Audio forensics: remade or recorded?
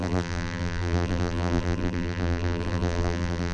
remade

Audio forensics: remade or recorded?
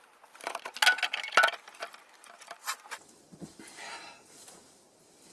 recorded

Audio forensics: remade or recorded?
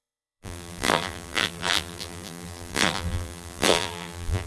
remade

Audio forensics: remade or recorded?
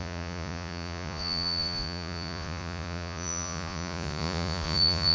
remade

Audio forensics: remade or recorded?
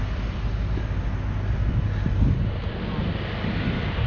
recorded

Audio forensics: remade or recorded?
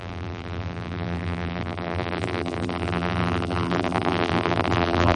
remade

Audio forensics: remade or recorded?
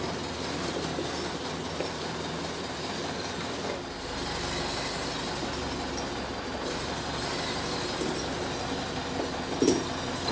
recorded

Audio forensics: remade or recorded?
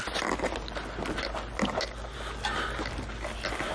recorded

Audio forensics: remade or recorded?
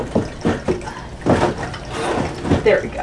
recorded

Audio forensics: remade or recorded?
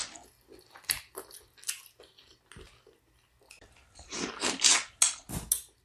recorded